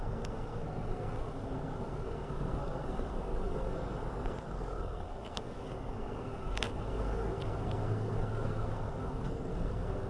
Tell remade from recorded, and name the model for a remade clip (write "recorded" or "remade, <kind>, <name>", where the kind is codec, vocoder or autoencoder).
remade, codec, SNAC